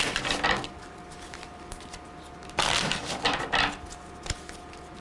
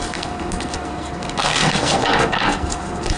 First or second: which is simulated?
second